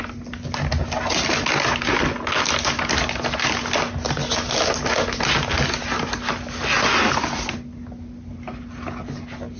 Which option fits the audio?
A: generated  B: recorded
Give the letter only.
B